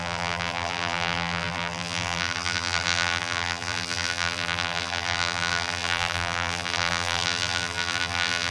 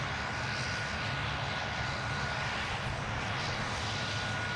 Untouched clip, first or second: second